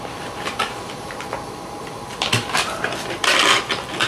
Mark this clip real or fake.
fake